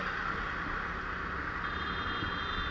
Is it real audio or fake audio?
real